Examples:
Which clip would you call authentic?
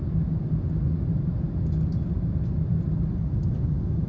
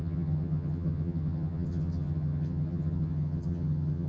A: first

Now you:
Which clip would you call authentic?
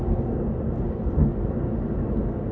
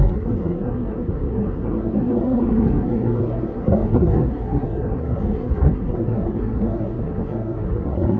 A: first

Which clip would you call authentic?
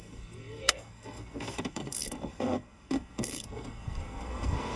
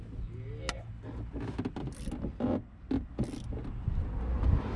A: second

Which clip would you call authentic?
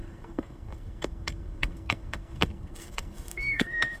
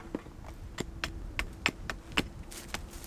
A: second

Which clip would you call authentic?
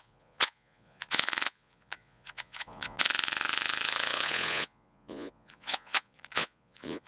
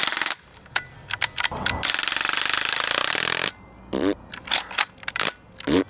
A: second